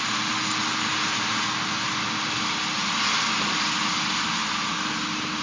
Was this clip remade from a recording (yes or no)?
no